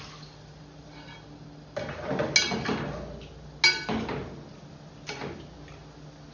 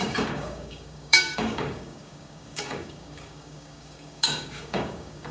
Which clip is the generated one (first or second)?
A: second